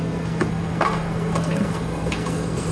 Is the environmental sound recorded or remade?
remade